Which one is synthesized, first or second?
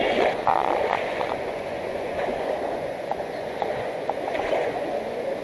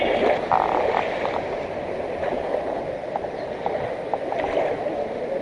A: first